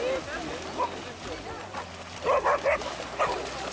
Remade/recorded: recorded